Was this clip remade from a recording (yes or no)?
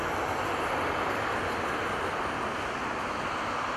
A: no